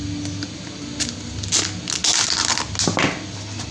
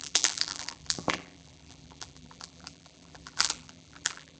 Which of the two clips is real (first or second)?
first